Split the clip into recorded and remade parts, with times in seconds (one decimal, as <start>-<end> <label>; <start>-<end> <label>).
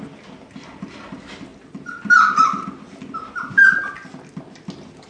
0.0-5.1 recorded